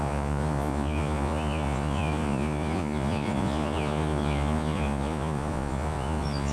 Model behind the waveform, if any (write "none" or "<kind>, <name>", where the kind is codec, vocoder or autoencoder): vocoder, Vocos